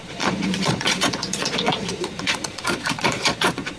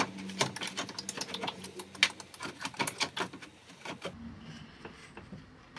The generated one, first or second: first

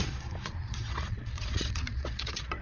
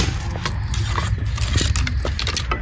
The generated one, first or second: first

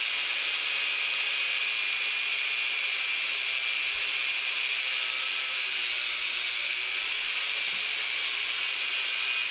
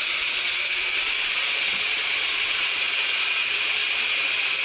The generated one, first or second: second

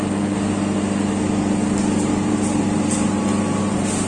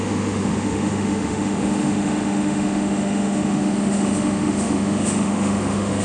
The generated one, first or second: second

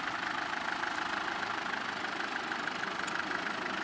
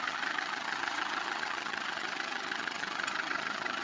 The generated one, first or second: second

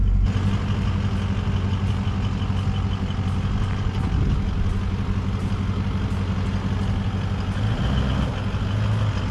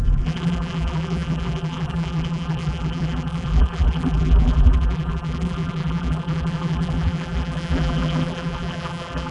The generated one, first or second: second